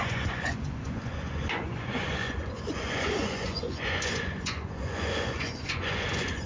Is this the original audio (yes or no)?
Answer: no